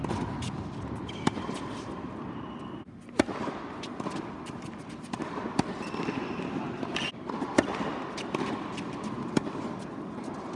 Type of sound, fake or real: real